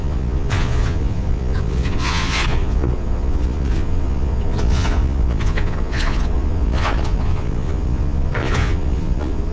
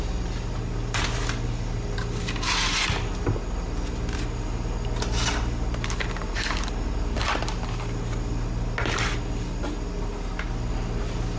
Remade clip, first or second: first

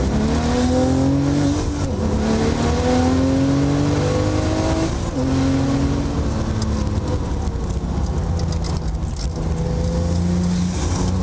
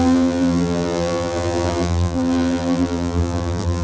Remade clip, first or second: second